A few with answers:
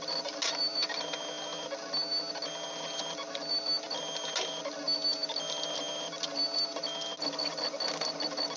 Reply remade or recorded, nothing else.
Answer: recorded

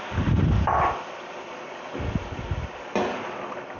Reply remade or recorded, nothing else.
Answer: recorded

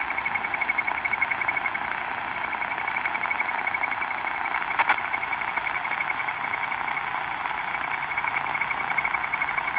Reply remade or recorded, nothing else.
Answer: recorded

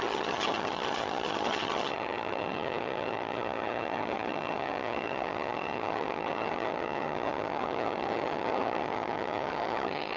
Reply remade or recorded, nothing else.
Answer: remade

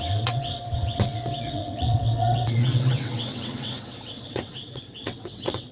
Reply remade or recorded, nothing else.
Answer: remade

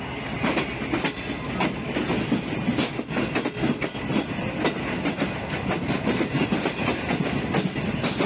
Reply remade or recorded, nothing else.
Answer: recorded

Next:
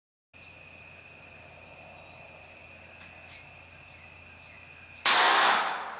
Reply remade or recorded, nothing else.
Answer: recorded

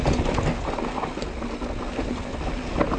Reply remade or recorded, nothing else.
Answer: recorded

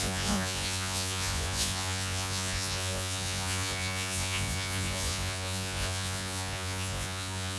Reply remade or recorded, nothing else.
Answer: remade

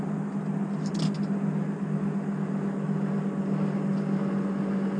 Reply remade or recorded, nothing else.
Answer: recorded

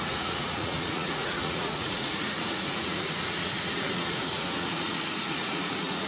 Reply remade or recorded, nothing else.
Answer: remade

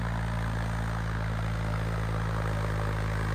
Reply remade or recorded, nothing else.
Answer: recorded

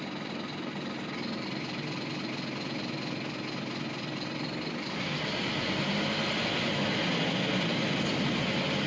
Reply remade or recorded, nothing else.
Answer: recorded